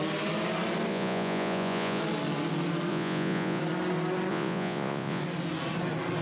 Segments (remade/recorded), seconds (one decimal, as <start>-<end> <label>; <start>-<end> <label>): 0.0-0.9 recorded; 0.9-2.0 remade; 2.0-2.9 recorded; 2.9-3.6 remade; 3.6-4.3 recorded; 4.3-5.2 remade; 5.2-6.2 recorded